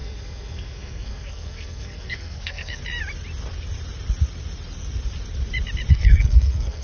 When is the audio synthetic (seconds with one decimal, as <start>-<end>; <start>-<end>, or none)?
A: 0.0-2.8; 5.9-6.8